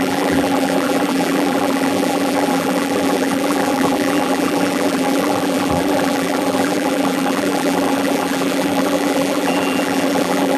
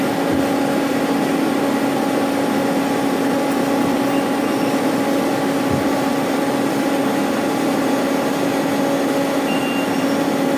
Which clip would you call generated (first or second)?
first